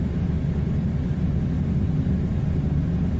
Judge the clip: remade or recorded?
recorded